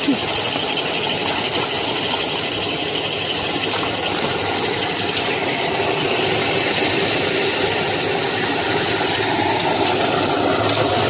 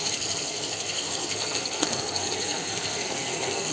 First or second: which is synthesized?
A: second